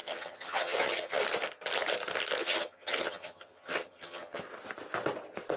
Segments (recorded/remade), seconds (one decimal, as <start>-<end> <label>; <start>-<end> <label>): 0.0-1.2 remade; 1.2-2.4 recorded; 2.4-4.4 remade; 4.4-5.6 recorded